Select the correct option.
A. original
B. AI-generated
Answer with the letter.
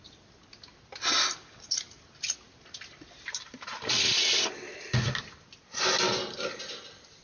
A